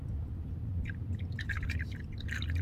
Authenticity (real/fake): real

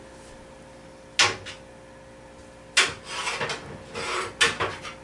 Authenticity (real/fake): real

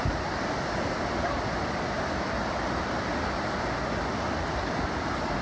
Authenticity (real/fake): real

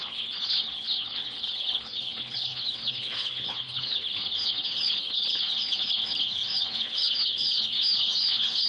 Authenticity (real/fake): fake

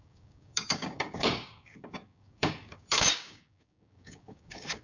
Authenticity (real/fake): fake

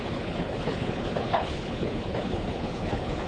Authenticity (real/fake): fake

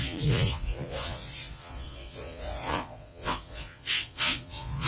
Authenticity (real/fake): fake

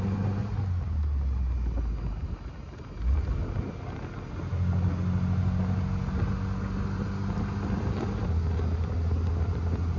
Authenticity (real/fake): real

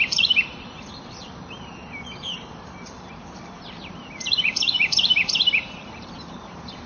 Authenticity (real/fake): fake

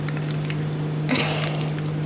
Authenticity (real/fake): real